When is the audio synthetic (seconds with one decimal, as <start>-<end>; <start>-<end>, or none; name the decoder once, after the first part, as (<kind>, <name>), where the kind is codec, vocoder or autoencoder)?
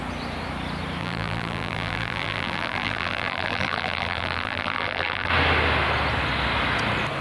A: 1.0-5.3 (vocoder, BigVGAN v2)